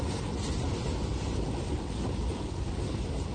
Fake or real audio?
real